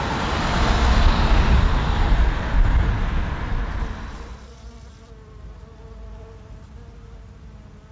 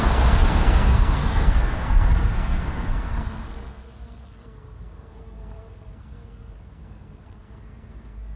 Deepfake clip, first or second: second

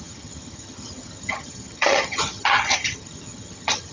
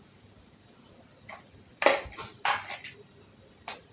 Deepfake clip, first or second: first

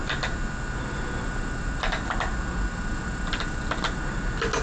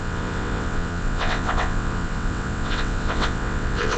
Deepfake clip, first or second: second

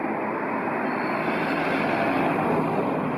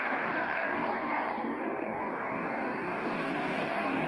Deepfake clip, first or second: second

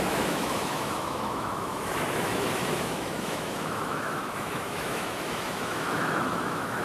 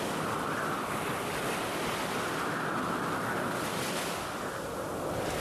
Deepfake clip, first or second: first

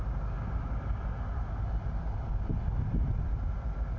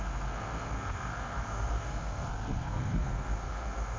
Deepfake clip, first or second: second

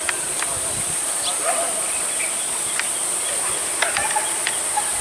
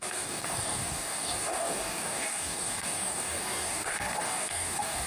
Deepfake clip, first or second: second